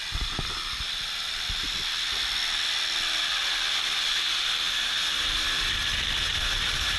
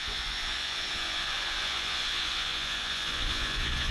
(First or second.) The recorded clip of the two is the first